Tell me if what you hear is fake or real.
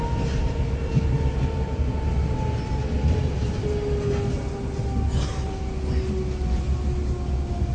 real